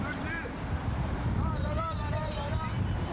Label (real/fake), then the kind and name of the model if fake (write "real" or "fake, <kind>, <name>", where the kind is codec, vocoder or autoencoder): fake, vocoder, BigVGAN v2